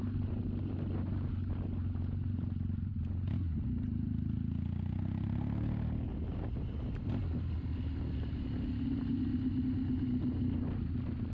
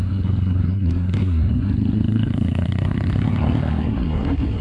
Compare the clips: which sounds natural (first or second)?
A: first